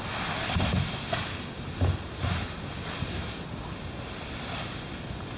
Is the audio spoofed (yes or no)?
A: no